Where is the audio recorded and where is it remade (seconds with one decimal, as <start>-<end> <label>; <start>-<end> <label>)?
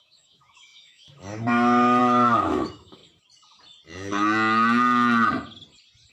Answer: 0.0-3.0 remade; 3.0-6.1 recorded